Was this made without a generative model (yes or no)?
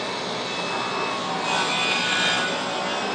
yes